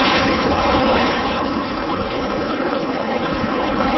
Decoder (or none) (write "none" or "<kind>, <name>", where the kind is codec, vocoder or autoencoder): codec, HILCodec